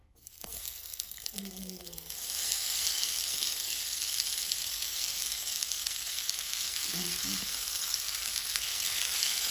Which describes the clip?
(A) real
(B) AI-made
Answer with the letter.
B